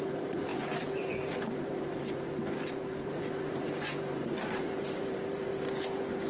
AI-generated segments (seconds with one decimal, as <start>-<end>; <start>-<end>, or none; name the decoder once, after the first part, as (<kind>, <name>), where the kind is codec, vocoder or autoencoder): 0.0-5.5 (vocoder, BigVGAN v2)